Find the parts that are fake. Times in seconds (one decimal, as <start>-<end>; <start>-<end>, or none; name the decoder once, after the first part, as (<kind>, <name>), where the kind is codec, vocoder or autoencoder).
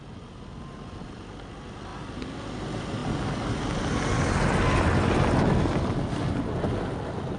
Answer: 1.9-2.4 (vocoder, BigVGAN v2)